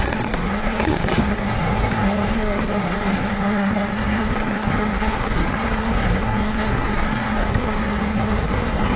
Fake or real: fake